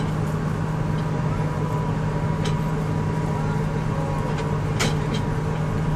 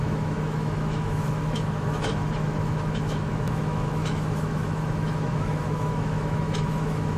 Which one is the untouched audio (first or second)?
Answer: first